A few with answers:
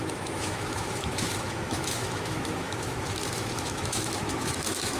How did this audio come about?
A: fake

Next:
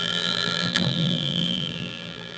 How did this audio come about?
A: fake